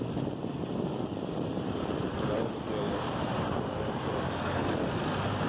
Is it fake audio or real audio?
fake